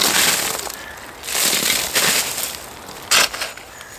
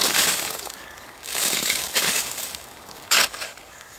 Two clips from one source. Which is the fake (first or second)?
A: second